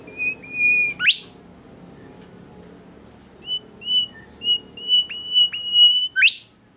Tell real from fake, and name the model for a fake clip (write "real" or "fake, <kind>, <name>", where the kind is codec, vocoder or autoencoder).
real